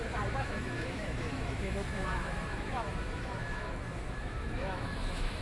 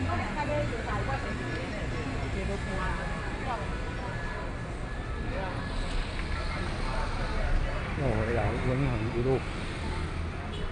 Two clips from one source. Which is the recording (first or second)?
second